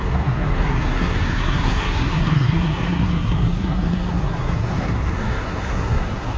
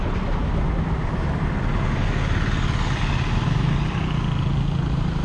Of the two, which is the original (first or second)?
second